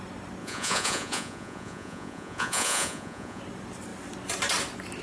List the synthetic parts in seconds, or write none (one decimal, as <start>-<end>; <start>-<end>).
0.4-3.4